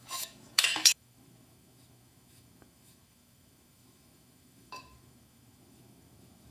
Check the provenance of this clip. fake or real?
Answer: fake